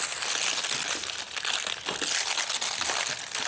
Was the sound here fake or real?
real